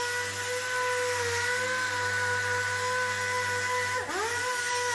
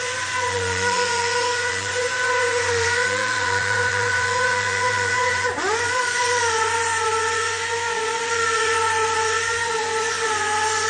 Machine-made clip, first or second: second